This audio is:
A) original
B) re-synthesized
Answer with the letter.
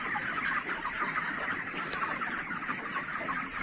B